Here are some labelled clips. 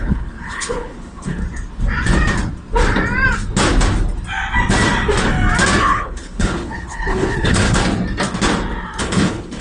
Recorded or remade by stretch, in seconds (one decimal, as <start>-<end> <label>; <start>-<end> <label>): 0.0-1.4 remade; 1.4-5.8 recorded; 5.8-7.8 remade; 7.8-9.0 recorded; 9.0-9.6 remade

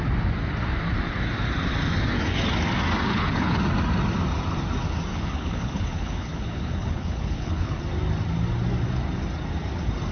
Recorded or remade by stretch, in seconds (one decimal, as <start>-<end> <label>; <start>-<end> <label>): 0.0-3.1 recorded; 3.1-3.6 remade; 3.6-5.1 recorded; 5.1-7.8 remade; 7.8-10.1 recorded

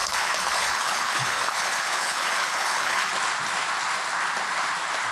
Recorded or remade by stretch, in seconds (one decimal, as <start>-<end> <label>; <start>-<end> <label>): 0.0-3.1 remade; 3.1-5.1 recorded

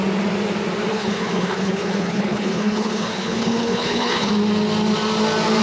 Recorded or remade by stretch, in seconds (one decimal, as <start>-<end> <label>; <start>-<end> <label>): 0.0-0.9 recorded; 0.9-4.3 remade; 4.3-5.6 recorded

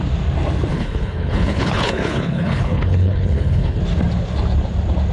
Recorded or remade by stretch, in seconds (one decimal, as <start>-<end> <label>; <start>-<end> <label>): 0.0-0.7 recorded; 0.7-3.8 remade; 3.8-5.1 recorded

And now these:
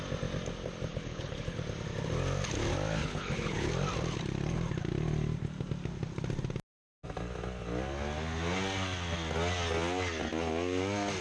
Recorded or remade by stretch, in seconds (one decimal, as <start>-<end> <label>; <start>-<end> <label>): 0.0-0.9 recorded; 0.9-1.6 remade; 1.6-3.0 recorded; 3.0-3.7 remade; 3.7-11.2 recorded